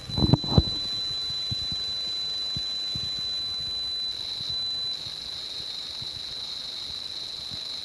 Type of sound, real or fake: real